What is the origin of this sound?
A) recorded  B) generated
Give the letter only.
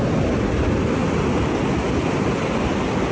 A